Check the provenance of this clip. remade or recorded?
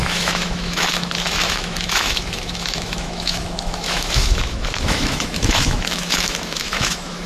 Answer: remade